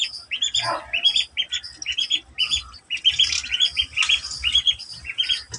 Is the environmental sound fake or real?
real